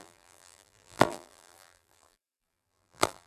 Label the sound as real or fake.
fake